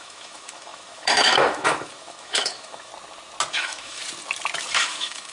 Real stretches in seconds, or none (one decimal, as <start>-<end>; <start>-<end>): 2.9-3.5; 4.0-4.7